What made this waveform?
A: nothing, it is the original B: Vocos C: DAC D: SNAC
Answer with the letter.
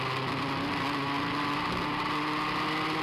A